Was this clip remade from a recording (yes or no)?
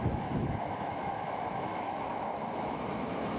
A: yes